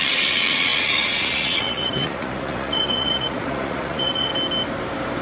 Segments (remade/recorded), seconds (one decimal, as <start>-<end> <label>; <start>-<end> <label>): 0.0-4.3 remade; 4.3-5.2 recorded